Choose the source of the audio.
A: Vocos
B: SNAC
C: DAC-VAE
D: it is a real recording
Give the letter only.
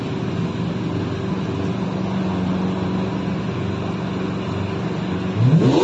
D